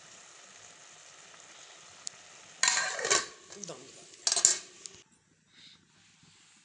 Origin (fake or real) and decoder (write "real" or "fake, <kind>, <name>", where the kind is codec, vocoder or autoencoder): real